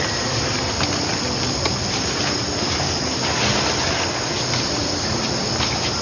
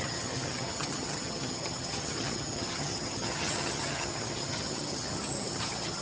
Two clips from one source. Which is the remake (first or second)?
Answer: second